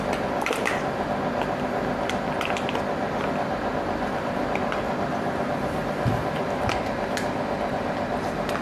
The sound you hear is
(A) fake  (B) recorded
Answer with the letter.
B